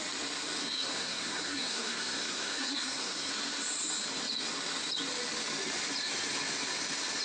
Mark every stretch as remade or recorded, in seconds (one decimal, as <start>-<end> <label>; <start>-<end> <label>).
0.0-0.6 recorded; 0.6-3.3 remade; 3.3-7.2 recorded